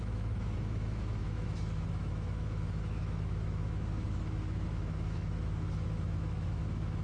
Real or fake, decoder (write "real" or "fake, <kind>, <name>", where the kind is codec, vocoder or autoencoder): fake, autoencoder, DAC-VAE